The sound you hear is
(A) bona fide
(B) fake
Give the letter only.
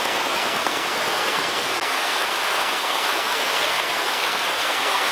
B